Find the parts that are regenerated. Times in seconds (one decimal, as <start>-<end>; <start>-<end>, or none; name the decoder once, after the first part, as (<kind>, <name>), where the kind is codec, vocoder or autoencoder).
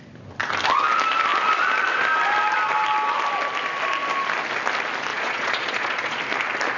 5.1-6.2 (vocoder, Vocos)